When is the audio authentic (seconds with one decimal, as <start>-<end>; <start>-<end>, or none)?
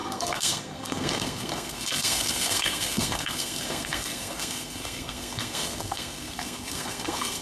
none